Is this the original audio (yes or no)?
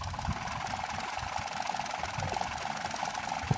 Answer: yes